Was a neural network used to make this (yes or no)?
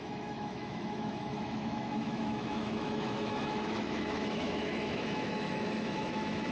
yes